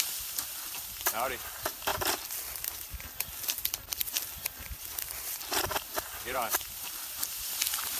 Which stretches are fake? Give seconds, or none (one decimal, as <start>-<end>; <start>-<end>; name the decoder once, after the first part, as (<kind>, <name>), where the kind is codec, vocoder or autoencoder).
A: none